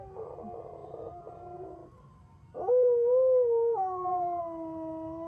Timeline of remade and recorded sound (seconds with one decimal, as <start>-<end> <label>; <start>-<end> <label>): 0.0-0.8 recorded; 0.8-1.4 remade; 1.4-1.8 recorded; 1.8-4.4 remade; 4.4-5.3 recorded